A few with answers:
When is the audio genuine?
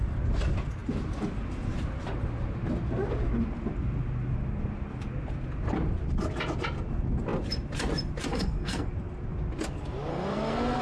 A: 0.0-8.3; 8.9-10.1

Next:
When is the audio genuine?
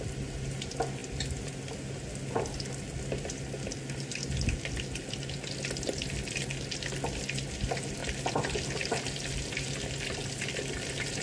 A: 0.0-11.2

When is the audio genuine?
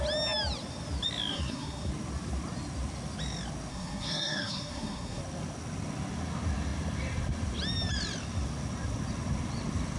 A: 0.0-1.3; 1.9-3.7; 5.2-10.0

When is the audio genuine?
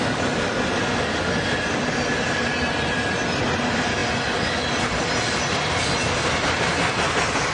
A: 0.0-7.5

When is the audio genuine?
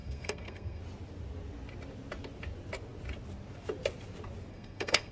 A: 0.8-4.5